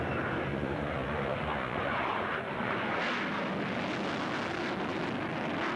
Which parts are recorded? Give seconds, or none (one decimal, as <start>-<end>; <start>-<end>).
0.0-0.5; 3.0-5.8